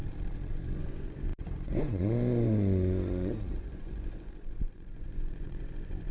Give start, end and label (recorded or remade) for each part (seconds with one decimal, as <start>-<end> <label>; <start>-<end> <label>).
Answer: 0.0-0.5 recorded; 0.5-6.1 remade